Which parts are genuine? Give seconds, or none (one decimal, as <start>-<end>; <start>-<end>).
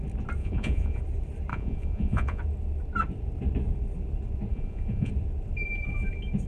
0.0-0.4; 1.0-1.5; 2.4-4.5; 5.1-6.5